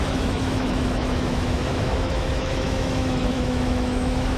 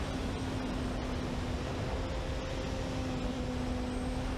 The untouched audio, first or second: second